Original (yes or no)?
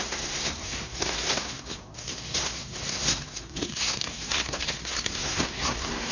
no